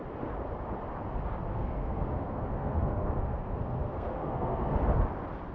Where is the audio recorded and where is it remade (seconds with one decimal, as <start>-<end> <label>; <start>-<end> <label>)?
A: 0.0-1.5 recorded; 1.5-4.8 remade; 4.8-5.5 recorded